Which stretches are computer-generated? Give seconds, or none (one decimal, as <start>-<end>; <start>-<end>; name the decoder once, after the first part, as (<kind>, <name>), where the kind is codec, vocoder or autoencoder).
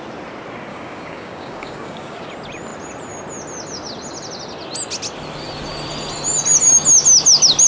0.7-2.3 (codec, DAC)